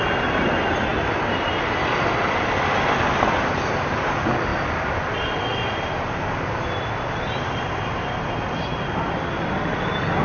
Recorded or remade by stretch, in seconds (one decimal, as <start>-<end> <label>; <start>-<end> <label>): 0.0-10.2 recorded

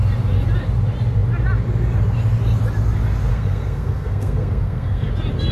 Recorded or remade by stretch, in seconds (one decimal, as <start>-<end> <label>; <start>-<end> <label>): 0.0-3.3 recorded; 3.3-5.1 remade; 5.1-5.5 recorded

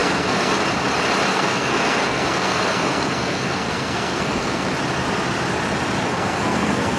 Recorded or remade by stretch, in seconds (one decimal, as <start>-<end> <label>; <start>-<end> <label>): 0.0-0.5 remade; 0.5-1.3 recorded; 1.3-4.7 remade; 4.7-6.1 recorded; 6.1-7.0 remade

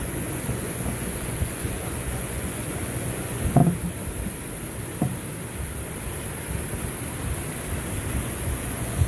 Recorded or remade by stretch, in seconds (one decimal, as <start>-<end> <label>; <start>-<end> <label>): 0.0-3.6 remade; 3.6-8.1 recorded; 8.1-9.1 remade

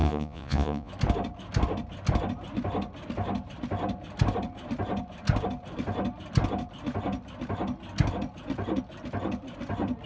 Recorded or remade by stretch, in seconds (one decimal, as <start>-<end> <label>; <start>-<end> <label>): 0.0-0.9 remade; 0.9-10.1 recorded

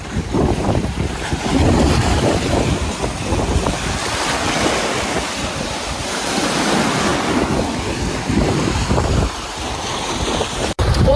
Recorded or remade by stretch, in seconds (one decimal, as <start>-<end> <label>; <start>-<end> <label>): 0.0-1.5 remade; 1.5-6.0 recorded; 6.0-7.1 remade; 7.1-8.4 recorded; 8.4-11.2 remade

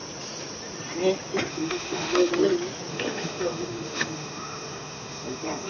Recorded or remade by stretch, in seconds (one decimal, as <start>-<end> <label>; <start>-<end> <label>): 0.0-1.5 recorded; 1.5-2.3 remade; 2.3-2.9 recorded; 2.9-5.7 remade